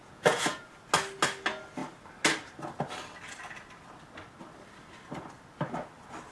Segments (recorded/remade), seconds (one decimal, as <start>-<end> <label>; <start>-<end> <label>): 0.0-0.7 remade; 0.7-6.3 recorded